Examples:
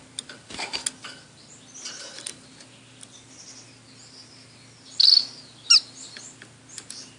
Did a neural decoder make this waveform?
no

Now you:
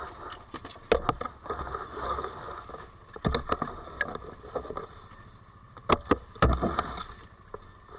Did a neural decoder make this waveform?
no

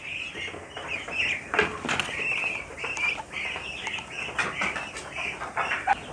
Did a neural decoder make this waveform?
no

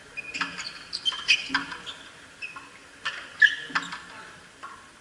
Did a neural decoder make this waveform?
no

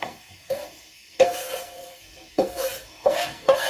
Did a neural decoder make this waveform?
yes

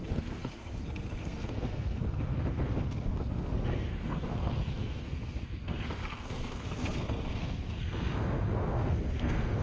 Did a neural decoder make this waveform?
yes